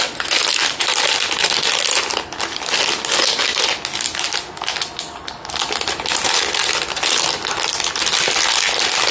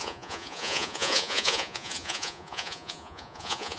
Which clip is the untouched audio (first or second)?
first